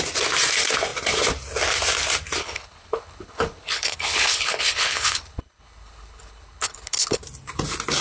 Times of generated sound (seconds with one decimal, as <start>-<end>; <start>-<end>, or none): 2.4-7.2